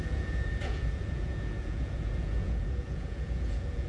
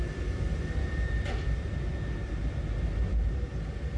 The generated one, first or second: first